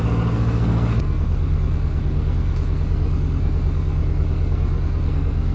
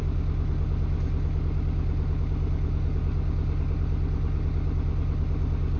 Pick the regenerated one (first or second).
first